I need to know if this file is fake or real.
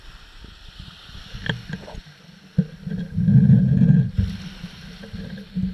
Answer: real